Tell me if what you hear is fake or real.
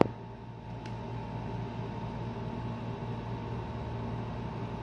real